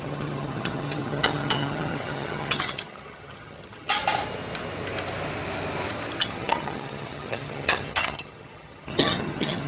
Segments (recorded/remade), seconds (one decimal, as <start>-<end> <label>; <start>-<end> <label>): 0.0-4.0 remade; 4.0-6.2 recorded; 6.2-9.7 remade